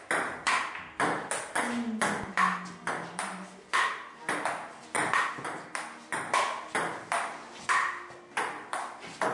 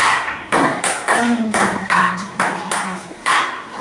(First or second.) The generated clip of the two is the second